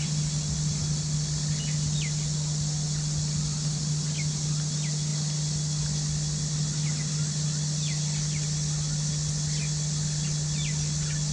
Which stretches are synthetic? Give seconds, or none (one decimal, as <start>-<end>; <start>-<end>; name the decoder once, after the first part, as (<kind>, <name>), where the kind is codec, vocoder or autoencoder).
none